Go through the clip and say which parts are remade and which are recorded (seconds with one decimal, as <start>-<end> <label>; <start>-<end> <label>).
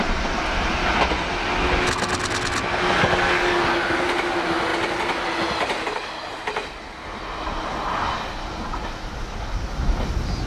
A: 0.0-10.5 recorded